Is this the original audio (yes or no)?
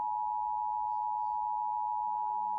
yes